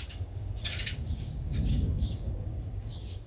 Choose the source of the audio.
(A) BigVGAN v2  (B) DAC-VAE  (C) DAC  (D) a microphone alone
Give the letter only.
C